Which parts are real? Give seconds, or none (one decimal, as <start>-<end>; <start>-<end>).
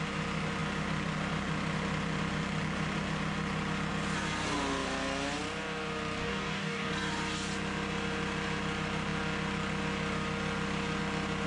0.0-6.2; 6.9-11.5